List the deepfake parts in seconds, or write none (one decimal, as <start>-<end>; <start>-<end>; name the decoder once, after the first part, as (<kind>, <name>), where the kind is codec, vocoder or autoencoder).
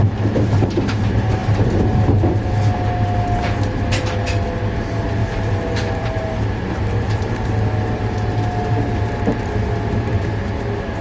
5.2-7.5 (vocoder, BigVGAN v2)